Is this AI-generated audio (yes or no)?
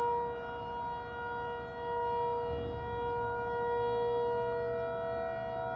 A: no